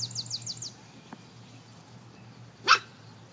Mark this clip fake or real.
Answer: real